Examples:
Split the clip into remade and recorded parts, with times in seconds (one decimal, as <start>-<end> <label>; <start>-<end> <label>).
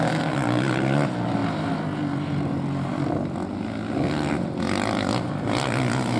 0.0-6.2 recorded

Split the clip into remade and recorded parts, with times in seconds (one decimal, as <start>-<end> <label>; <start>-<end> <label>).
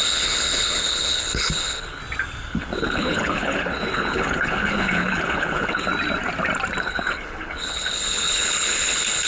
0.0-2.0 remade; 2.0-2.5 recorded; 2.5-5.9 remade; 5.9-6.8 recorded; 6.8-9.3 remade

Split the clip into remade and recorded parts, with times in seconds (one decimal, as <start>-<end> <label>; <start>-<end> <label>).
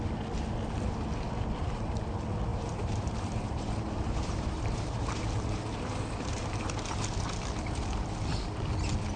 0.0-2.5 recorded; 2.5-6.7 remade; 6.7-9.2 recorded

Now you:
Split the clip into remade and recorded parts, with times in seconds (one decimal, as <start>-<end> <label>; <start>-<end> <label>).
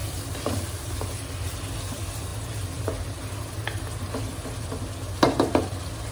0.0-1.1 remade; 1.1-2.3 recorded; 2.3-3.4 remade; 3.4-6.1 recorded